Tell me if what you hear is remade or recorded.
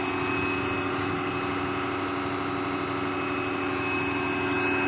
recorded